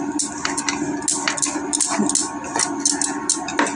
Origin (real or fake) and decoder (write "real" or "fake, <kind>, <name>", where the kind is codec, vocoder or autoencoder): real